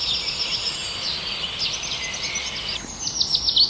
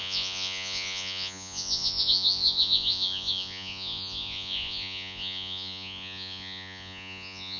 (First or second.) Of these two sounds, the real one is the first